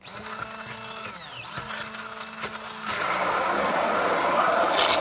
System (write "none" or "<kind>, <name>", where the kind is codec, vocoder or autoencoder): none